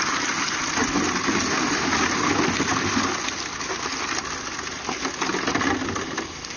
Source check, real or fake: real